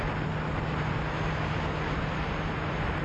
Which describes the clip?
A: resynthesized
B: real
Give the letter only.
B